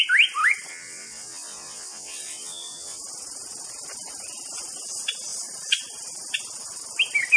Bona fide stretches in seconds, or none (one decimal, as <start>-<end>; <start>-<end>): 0.0-0.7; 3.0-7.4